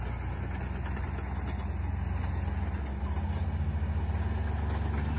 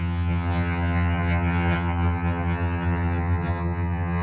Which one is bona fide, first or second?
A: first